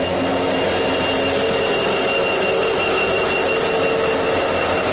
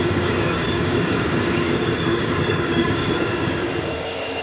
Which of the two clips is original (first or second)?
first